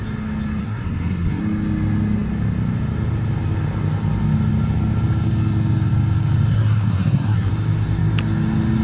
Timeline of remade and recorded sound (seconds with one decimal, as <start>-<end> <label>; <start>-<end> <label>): 0.0-0.6 recorded; 0.6-1.4 remade; 1.4-6.5 recorded; 6.5-7.5 remade; 7.5-8.8 recorded